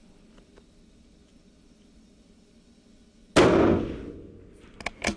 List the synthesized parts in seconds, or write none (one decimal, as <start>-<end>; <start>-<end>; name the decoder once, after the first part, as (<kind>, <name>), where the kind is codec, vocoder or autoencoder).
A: none

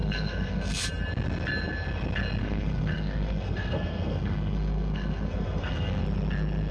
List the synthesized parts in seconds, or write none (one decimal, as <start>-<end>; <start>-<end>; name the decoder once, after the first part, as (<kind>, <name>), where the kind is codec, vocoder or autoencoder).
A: 0.0-0.9 (codec, SNAC); 2.4-6.0

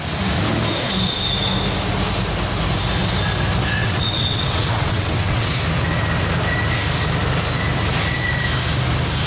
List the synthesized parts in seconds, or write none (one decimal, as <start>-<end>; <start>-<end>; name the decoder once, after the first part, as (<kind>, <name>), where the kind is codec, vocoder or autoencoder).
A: 3.8-5.5 (vocoder, WaveNeXt)

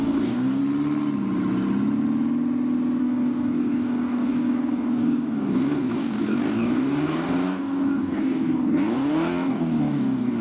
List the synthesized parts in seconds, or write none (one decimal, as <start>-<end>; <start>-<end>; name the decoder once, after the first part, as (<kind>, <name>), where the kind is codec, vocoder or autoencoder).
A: 0.0-0.6 (codec, DAC); 3.0-10.4

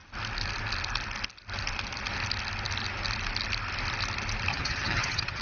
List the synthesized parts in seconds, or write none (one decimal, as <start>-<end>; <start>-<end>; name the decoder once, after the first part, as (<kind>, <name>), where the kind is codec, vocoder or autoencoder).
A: 4.5-5.4 (vocoder, HiFi-GAN)

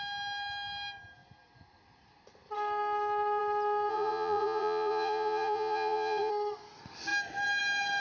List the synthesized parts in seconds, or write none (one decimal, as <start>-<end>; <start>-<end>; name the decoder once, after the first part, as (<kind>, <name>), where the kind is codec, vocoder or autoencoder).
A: 3.9-6.3 (vocoder, Vocos)

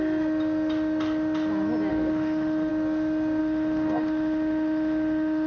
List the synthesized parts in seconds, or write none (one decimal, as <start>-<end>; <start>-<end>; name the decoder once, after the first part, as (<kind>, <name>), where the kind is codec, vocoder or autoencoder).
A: 1.9-2.7 (autoencoder, DAC-VAE); 3.4-5.5